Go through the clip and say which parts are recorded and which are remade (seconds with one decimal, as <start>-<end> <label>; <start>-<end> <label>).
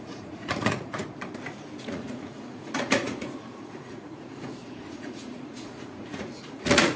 0.0-1.0 remade; 1.0-1.8 recorded; 1.8-7.0 remade